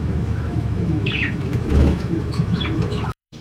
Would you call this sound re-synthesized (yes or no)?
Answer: yes